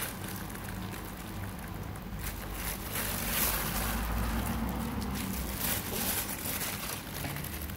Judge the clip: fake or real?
real